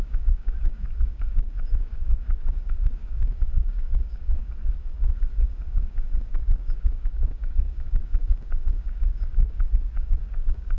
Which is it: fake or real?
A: fake